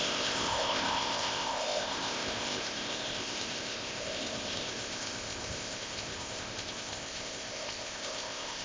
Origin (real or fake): fake